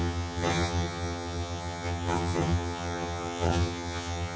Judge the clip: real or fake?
fake